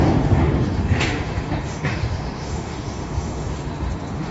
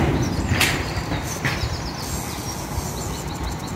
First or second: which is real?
second